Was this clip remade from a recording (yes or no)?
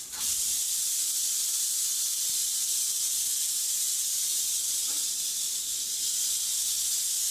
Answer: yes